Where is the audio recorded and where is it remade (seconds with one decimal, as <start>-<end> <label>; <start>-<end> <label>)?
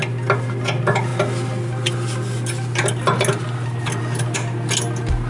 0.0-5.3 recorded